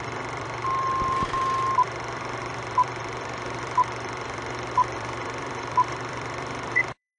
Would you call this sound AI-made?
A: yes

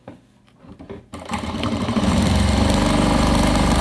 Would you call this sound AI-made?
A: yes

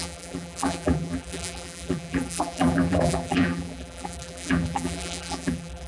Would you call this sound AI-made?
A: yes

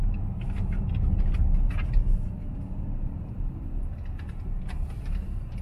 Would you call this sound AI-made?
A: no